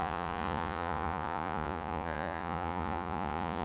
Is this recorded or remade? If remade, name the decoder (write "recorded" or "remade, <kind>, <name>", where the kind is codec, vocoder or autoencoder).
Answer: remade, vocoder, Vocos